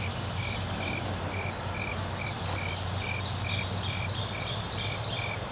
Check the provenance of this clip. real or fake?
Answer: real